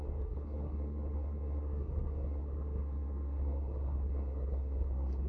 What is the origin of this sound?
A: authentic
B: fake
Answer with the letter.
B